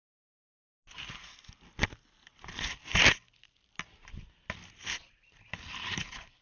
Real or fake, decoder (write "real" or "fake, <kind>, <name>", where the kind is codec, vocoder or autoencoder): real